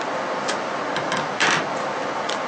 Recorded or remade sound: recorded